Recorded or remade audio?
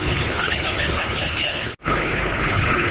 remade